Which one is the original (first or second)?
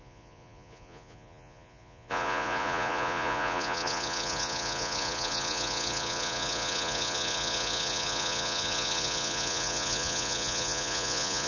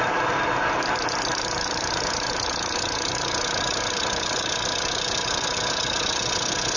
second